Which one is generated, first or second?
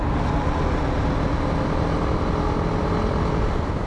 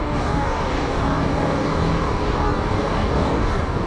second